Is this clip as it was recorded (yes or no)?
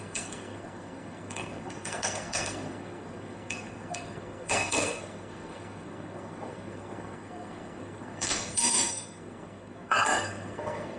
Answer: no